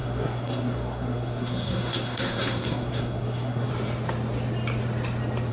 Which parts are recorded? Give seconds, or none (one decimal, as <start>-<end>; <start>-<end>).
3.7-5.5